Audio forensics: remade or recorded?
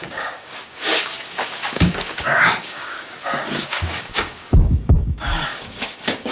remade